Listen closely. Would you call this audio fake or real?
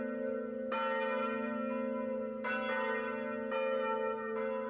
real